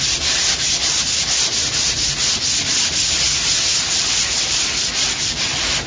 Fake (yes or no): no